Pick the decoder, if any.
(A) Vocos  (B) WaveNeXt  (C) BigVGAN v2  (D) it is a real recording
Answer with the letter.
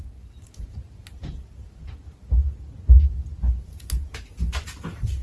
D